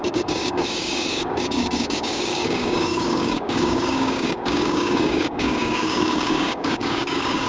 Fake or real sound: fake